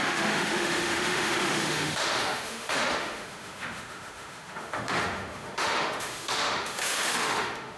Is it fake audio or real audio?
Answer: fake